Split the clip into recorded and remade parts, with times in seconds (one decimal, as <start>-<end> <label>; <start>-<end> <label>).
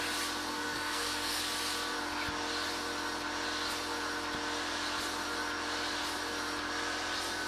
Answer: 0.0-0.5 recorded; 0.5-1.4 remade; 1.4-7.5 recorded